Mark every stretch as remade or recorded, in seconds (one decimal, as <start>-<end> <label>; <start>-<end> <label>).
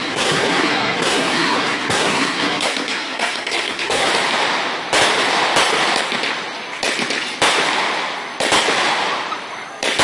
0.0-4.1 remade; 4.1-10.0 recorded